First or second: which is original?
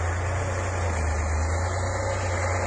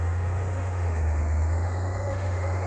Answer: first